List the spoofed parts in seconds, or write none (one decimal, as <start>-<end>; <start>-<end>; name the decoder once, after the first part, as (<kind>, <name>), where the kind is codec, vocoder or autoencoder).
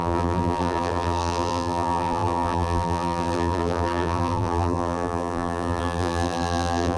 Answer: 0.0-7.0 (vocoder, BigVGAN v2)